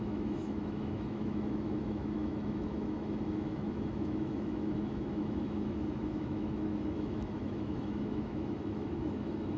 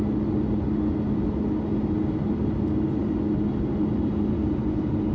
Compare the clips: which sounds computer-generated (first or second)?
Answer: first